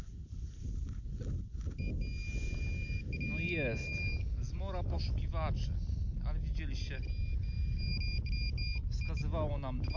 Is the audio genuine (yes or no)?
yes